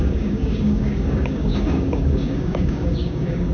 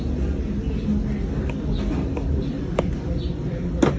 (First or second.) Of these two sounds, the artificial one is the first